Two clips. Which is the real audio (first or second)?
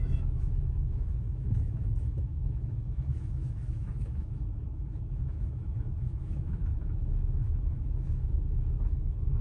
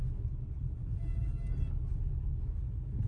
second